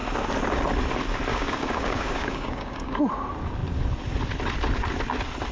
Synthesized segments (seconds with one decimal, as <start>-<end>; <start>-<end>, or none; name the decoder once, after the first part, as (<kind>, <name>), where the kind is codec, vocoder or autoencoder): 1.3-3.0 (codec, DAC)